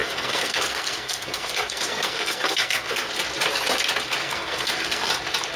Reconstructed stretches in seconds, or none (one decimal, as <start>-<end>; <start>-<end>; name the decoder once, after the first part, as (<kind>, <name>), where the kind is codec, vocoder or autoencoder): 0.0-3.1 (codec, SNAC); 4.2-5.1